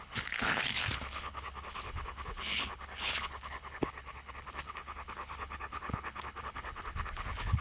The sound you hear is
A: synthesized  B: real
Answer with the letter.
A